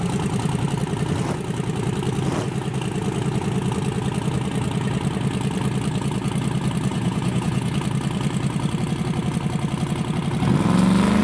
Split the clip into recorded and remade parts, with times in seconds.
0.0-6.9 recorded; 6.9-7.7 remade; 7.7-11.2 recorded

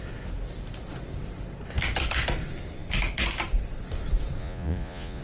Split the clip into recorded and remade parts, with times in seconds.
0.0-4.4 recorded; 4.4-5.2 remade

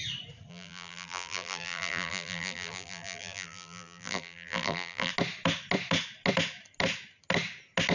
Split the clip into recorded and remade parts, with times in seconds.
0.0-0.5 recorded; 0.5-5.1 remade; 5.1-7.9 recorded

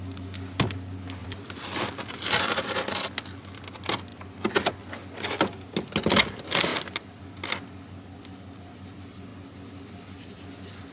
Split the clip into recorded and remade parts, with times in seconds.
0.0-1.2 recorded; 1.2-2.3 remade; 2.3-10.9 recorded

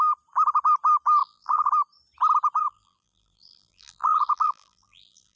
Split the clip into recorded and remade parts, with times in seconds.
0.0-1.2 recorded; 1.2-1.7 remade; 1.7-2.6 recorded; 2.6-5.4 remade

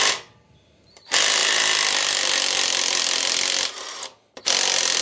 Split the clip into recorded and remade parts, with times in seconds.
0.0-5.0 recorded

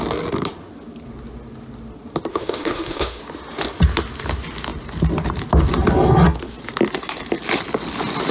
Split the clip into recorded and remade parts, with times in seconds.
0.0-2.3 recorded; 2.3-3.2 remade; 3.2-8.3 recorded